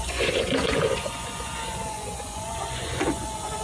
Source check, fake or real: fake